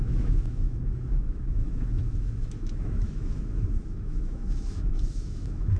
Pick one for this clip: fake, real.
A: fake